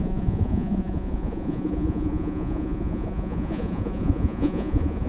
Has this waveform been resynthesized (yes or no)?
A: yes